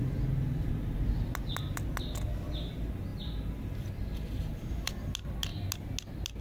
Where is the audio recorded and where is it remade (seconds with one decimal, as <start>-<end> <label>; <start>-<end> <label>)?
0.0-6.4 recorded